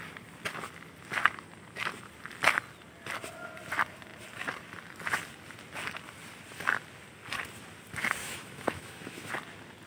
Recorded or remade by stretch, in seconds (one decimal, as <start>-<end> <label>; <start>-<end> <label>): 0.0-8.2 recorded; 8.2-9.3 remade; 9.3-9.9 recorded